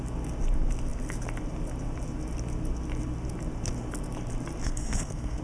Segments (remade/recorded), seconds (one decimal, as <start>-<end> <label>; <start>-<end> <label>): 0.0-4.7 recorded; 4.7-5.4 remade